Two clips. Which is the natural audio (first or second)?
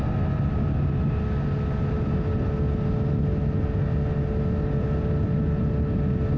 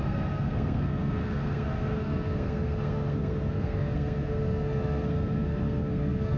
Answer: first